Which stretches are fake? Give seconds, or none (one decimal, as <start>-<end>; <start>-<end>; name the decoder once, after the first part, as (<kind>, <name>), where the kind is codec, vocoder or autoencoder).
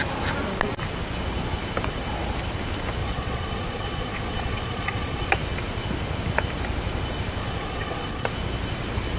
3.0-5.3 (vocoder, Vocos); 7.4-8.3